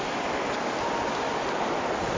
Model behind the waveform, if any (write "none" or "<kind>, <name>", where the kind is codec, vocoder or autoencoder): none